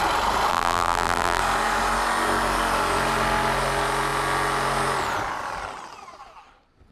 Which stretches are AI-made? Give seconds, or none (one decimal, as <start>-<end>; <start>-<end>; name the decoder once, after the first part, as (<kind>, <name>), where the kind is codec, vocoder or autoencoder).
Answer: 0.5-1.4 (vocoder, BigVGAN v2)